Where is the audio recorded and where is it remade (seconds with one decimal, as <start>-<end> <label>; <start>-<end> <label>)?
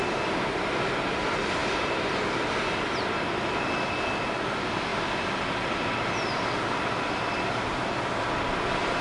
0.0-9.0 recorded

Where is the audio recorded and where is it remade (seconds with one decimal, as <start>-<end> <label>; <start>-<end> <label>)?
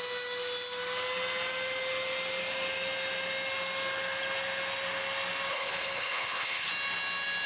0.0-5.5 recorded; 5.5-6.7 remade; 6.7-7.5 recorded